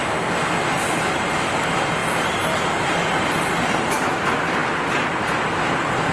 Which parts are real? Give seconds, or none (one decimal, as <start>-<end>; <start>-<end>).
0.0-6.1